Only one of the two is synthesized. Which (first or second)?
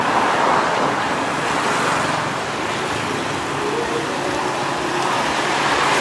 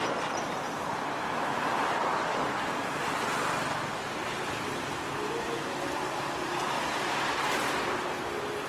first